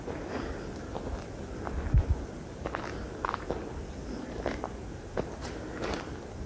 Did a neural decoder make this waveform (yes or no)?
no